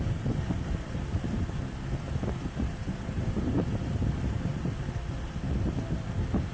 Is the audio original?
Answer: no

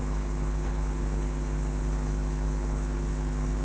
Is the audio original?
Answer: no